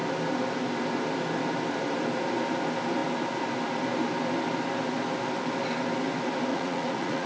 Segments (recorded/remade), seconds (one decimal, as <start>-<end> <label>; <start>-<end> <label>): 0.0-6.5 recorded; 6.5-7.3 remade